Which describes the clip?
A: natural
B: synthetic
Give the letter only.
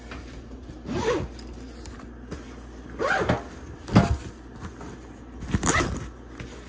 A